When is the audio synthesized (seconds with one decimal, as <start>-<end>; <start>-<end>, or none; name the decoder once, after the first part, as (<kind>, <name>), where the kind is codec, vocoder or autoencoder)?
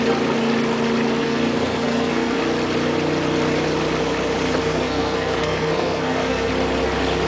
1.2-2.4 (codec, SNAC); 4.6-6.5